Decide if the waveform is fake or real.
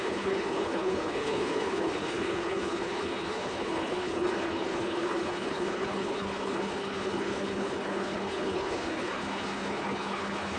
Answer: fake